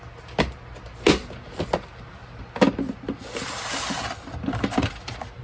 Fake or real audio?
real